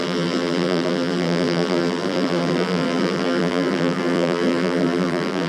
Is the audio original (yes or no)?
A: no